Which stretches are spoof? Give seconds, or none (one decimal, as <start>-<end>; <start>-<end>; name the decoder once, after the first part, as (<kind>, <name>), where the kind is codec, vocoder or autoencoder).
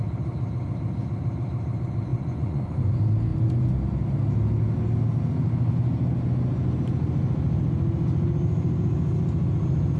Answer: 2.1-2.8 (vocoder, Vocos)